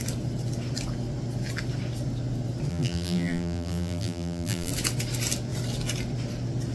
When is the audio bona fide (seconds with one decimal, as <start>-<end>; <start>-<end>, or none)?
0.0-2.7; 4.7-6.7